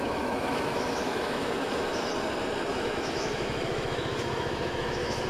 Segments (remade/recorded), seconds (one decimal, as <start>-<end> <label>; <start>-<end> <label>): 0.0-2.1 remade; 2.1-2.7 recorded; 2.7-5.3 remade